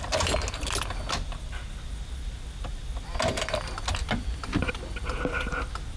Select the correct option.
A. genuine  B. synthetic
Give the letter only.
A